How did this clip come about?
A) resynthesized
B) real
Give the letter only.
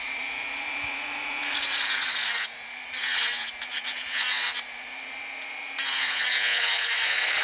A